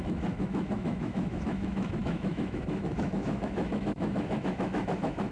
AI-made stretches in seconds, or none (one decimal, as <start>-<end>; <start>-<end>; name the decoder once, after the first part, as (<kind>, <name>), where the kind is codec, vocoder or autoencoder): 0.0-5.3 (autoencoder, DAC-VAE)